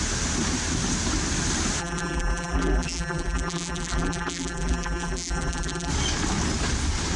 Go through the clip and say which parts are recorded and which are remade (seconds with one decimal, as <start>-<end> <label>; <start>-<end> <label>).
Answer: 0.0-1.8 recorded; 1.8-5.9 remade; 5.9-7.2 recorded

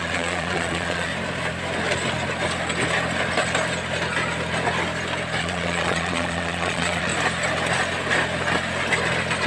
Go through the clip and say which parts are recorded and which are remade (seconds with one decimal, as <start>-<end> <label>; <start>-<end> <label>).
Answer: 0.0-1.1 remade; 1.1-5.4 recorded; 5.4-7.1 remade; 7.1-9.5 recorded